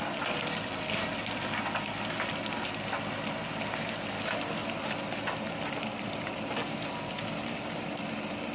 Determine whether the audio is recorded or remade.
recorded